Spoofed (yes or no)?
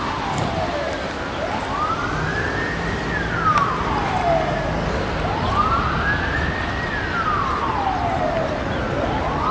no